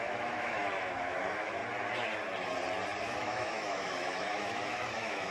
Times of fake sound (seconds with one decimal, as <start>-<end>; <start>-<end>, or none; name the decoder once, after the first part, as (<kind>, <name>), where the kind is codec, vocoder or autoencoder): 0.0-1.6 (autoencoder, DAC-VAE); 3.0-5.3

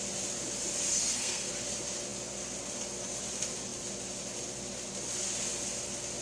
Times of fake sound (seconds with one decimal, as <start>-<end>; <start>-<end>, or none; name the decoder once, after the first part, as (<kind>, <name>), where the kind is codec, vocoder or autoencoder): 0.9-1.5 (codec, SNAC)

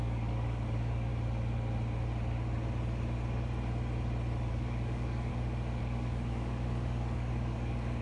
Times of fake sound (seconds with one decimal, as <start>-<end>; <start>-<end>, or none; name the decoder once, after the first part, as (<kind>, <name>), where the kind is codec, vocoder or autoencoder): 0.0-1.1 (codec, DAC); 4.5-5.3; 5.8-8.0

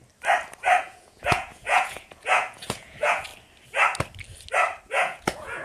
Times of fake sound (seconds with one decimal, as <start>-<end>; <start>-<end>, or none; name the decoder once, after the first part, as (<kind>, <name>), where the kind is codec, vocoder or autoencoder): 0.8-3.3 (vocoder, Vocos); 4.8-5.6

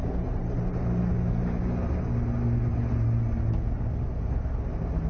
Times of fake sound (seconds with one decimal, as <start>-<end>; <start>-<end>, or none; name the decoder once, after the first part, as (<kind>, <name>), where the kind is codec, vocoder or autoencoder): 0.0-1.0 (vocoder, BigVGAN v2)

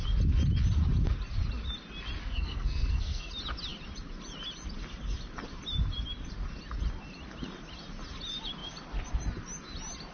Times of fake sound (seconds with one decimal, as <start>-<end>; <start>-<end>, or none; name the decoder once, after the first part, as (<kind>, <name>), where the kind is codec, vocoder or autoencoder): 2.2-3.3 (codec, SNAC)

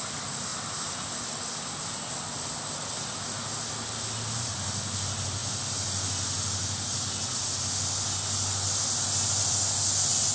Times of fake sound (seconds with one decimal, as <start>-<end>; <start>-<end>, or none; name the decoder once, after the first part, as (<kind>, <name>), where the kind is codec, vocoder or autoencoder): none